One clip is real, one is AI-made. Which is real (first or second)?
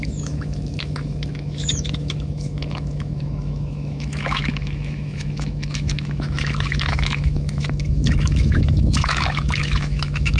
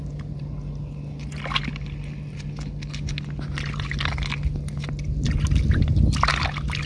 second